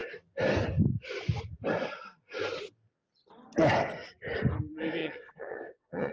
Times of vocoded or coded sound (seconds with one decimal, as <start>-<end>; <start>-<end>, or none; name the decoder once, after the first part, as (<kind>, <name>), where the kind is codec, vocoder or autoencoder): 5.0-6.1 (vocoder, WaveNeXt)

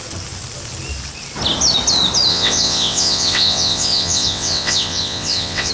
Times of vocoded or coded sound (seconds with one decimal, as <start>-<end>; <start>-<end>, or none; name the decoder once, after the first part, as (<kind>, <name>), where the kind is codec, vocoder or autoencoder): 2.3-5.7 (vocoder, WaveNeXt)

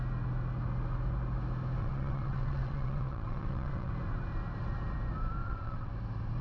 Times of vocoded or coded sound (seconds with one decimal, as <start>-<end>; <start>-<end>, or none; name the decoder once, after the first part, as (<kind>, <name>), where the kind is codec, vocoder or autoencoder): 1.8-3.9 (vocoder, WaveNeXt); 5.4-5.9

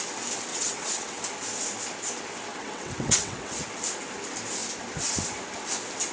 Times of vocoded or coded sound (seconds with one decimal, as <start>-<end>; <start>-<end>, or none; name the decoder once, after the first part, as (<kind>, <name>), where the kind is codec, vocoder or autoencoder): 0.5-1.2 (vocoder, WaveNeXt); 2.5-3.6

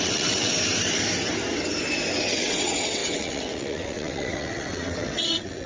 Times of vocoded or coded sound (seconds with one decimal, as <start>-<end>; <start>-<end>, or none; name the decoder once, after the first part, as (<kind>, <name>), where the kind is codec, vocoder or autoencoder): 0.0-0.5 (vocoder, WaveNeXt); 2.2-5.7

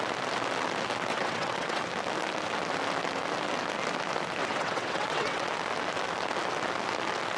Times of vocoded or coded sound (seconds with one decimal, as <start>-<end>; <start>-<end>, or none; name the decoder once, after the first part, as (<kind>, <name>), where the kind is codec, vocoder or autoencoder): 1.1-1.8 (vocoder, WaveNeXt); 4.4-5.5